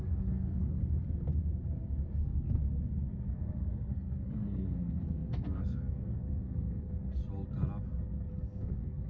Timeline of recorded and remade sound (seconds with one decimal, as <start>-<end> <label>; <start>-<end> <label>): 0.0-0.8 remade; 0.8-2.2 recorded; 2.2-2.6 remade; 2.6-3.3 recorded; 3.3-7.2 remade; 7.2-8.3 recorded; 8.3-9.1 remade